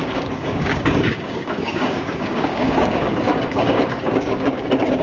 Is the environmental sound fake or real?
fake